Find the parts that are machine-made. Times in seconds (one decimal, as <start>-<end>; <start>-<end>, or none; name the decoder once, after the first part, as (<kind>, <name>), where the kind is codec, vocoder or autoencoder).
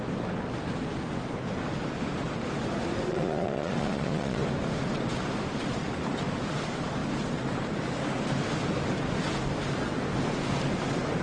3.1-4.4 (vocoder, Vocos)